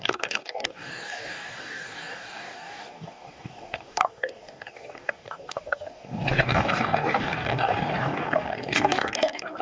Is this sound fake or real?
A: fake